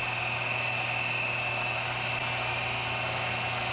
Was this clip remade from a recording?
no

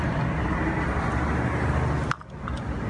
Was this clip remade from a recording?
no